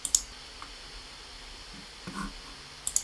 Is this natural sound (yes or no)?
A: yes